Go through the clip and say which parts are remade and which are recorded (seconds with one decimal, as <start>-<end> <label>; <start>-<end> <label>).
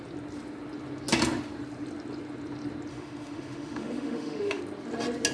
0.0-2.9 recorded; 2.9-4.6 remade; 4.6-5.3 recorded